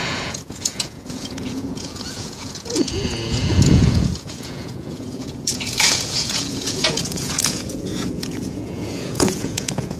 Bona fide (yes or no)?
no